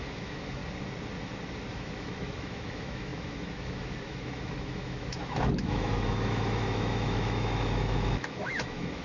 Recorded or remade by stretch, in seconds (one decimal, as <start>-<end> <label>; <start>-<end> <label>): 0.0-0.6 remade; 0.6-1.7 recorded; 1.7-9.0 remade